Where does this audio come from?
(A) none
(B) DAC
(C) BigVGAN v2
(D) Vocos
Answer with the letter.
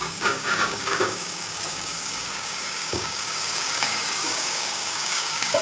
B